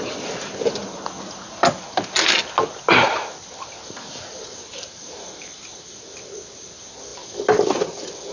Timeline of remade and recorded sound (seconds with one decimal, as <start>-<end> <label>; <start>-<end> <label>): 0.0-8.3 recorded